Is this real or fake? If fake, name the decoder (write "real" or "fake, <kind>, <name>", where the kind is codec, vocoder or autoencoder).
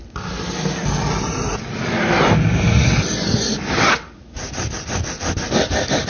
real